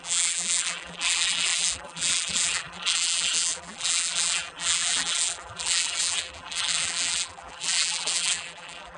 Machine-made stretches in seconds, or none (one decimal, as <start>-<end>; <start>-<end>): 0.0-9.0